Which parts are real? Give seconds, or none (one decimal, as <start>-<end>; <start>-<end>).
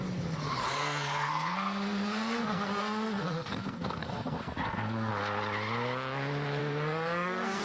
0.0-0.8; 5.1-6.6